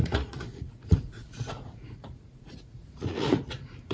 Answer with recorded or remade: remade